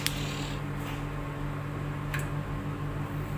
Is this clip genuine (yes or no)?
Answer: yes